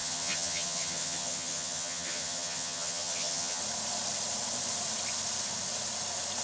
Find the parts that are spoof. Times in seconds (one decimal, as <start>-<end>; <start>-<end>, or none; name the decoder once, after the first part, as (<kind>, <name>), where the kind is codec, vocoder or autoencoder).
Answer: 0.0-3.6 (vocoder, HiFi-GAN)